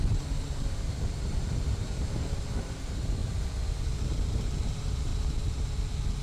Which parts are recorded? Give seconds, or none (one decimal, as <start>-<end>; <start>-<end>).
3.2-3.8